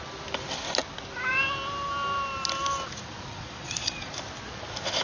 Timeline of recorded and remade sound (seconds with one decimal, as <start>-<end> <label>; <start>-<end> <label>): 0.0-3.3 recorded; 3.3-4.1 remade; 4.1-5.0 recorded